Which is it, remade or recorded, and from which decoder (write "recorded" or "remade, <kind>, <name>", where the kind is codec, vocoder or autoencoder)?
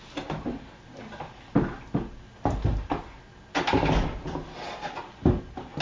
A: recorded